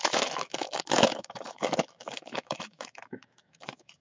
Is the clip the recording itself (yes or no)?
no